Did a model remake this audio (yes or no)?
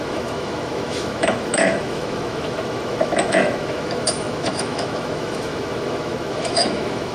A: yes